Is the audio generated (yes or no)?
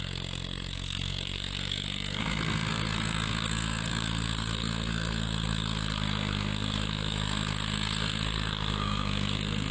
yes